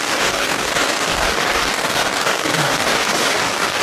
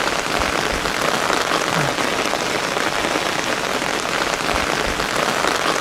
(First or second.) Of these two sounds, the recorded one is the second